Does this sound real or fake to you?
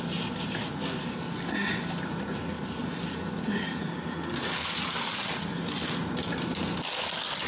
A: real